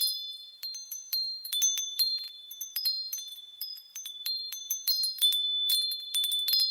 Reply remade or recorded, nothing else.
remade